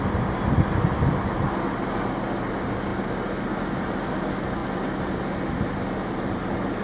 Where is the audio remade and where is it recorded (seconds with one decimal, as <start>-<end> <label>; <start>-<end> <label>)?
0.0-6.8 recorded